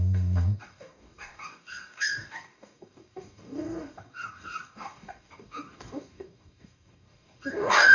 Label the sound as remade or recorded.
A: remade